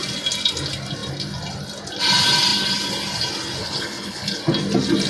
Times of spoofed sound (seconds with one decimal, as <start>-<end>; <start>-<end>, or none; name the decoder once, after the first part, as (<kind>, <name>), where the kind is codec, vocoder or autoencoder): 3.6-4.4 (codec, HILCodec)